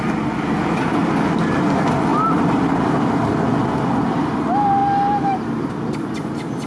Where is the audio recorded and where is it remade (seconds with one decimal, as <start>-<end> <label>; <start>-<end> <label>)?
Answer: 0.0-6.7 recorded